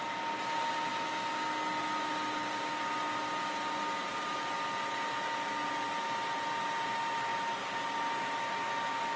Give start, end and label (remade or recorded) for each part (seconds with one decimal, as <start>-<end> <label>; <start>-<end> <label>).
0.0-9.2 recorded